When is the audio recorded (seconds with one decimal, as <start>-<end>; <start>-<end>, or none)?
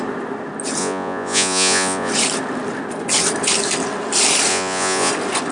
0.0-0.8; 2.1-4.5; 5.1-5.5